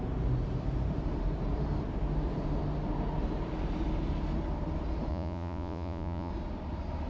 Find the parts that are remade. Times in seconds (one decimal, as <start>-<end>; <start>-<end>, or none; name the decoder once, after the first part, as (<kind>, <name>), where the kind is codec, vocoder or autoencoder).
5.1-6.3 (vocoder, Vocos)